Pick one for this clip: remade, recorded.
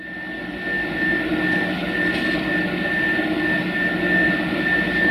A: recorded